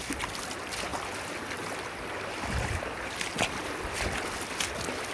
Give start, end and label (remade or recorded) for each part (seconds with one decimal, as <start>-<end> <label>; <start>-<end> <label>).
0.0-5.1 recorded